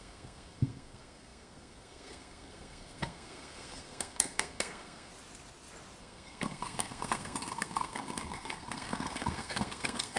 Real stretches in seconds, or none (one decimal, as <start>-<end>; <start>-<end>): 5.1-6.0